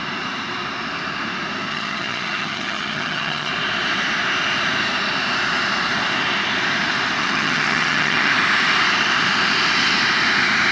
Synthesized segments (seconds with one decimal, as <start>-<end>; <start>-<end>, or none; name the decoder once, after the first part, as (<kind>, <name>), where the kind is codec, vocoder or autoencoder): 1.7-3.5 (vocoder, HiFi-GAN); 7.2-8.3